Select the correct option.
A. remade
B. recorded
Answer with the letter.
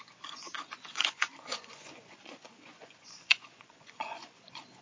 A